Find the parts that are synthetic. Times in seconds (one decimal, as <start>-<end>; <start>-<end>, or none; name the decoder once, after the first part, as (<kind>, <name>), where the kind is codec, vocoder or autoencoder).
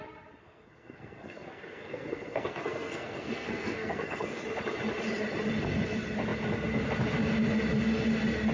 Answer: 0.4-4.4 (codec, SNAC)